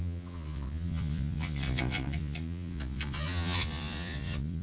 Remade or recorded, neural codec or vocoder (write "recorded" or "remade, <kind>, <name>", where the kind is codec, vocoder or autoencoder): remade, vocoder, Vocos